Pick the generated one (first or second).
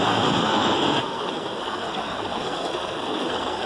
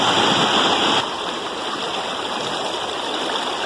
first